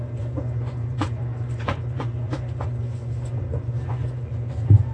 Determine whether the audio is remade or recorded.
remade